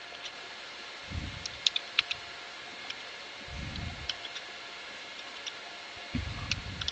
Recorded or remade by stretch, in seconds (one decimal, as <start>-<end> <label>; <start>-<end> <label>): 0.0-6.9 recorded